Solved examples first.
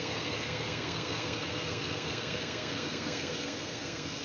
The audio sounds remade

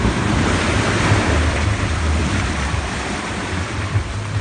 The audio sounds remade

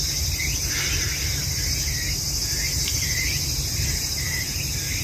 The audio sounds recorded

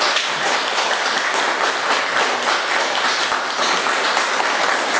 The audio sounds recorded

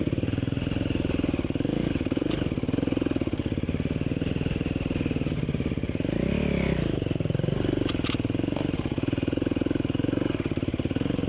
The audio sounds recorded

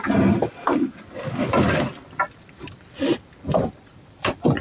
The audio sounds remade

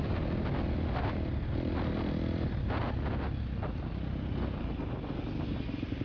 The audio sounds recorded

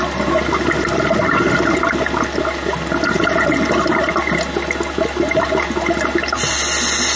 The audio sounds recorded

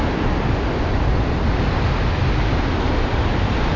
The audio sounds recorded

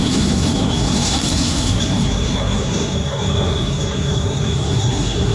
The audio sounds remade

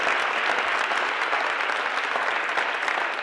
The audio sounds remade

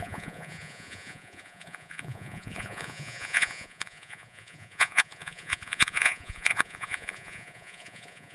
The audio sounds remade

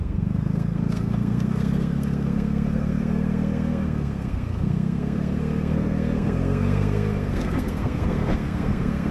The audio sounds remade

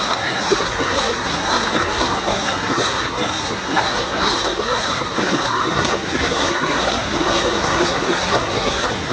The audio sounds remade